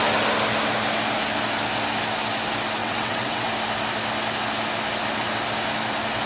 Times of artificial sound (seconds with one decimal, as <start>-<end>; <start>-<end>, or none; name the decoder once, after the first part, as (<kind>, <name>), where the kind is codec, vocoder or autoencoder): 2.8-3.5 (vocoder, WaveNeXt)